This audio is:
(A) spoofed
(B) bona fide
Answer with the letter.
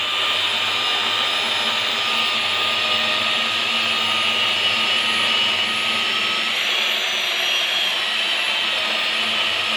B